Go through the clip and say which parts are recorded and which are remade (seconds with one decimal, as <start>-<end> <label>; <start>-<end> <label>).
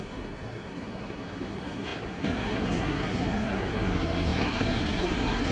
0.0-5.5 remade